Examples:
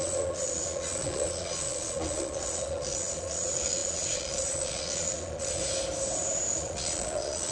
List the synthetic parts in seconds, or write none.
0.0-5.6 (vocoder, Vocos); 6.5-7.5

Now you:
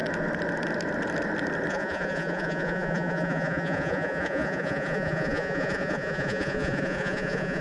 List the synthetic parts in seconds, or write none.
1.7-7.6 (vocoder, Vocos)

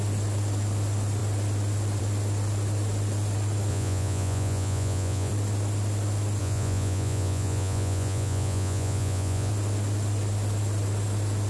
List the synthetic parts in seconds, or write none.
3.7-5.3 (vocoder, Vocos); 6.4-9.5

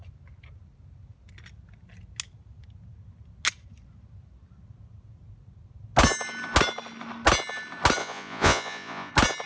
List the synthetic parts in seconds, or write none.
8.0-9.1 (vocoder, Vocos)

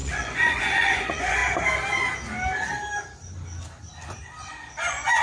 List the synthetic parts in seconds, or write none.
0.0-1.4 (vocoder, Vocos); 4.5-5.2

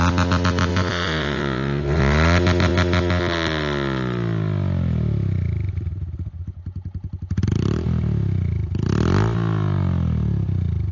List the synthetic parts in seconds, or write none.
0.7-2.0 (vocoder, Vocos)